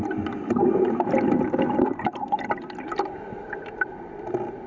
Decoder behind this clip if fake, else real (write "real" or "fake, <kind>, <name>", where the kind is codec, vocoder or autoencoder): real